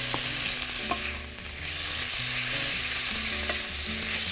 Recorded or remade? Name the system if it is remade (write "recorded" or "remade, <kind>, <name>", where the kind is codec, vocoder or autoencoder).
recorded